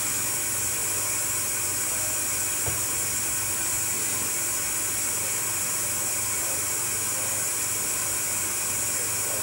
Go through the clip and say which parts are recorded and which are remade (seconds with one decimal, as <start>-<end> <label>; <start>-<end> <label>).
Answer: 0.0-9.4 recorded